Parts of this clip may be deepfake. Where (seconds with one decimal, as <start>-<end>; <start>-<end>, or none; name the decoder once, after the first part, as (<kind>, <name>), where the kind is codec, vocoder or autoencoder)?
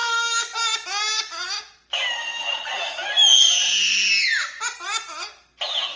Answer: none